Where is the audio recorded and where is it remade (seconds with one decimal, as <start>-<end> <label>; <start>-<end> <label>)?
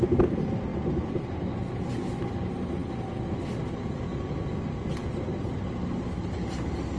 0.0-7.0 recorded